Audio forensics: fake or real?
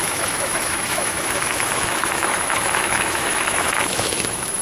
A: fake